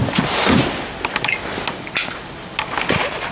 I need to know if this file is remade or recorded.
recorded